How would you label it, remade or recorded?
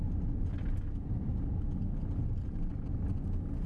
recorded